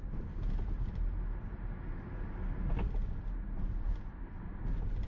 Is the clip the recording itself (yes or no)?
yes